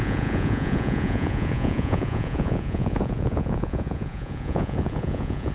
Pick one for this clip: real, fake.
fake